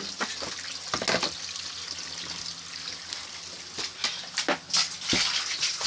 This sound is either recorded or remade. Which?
recorded